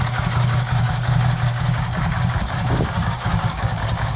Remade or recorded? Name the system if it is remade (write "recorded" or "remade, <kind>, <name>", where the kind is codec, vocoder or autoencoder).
remade, codec, DAC